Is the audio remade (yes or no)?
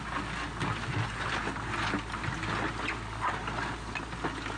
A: no